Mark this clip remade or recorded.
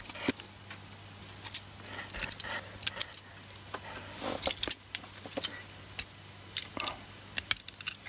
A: recorded